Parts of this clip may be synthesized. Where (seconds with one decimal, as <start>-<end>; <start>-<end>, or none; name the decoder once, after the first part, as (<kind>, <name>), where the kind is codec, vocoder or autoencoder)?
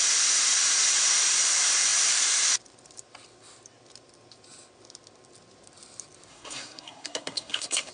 6.3-7.9 (codec, SNAC)